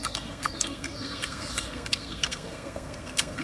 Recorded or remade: remade